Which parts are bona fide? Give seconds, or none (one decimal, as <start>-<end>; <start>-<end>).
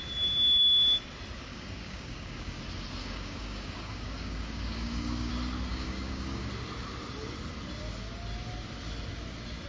0.0-1.5; 2.6-3.0; 5.3-5.7; 6.5-9.7